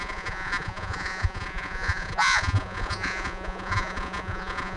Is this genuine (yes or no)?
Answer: no